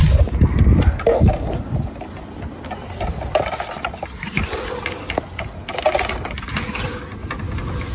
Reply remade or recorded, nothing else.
recorded